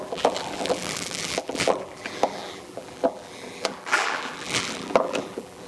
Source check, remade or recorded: remade